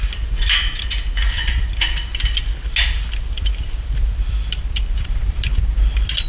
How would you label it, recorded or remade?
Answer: recorded